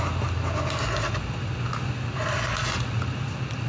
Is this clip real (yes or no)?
yes